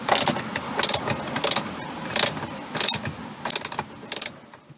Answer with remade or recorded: recorded